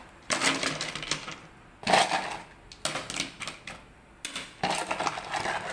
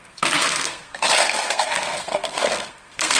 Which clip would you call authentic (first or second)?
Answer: first